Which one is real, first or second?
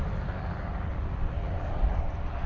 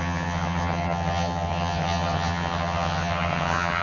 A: first